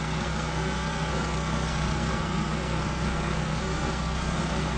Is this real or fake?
fake